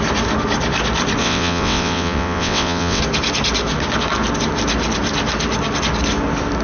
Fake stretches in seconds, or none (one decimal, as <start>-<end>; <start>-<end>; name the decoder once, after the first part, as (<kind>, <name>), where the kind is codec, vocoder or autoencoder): 1.2-3.0 (vocoder, WaveNeXt)

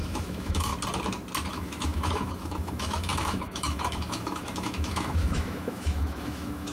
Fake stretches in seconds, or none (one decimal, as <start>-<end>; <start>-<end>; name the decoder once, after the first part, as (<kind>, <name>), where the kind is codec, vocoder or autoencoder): 0.0-0.7 (autoencoder, DAC-VAE); 1.5-6.7

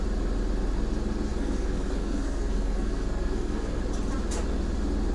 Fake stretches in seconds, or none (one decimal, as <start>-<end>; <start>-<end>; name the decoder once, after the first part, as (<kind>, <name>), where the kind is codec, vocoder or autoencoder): 1.3-3.8 (codec, SNAC)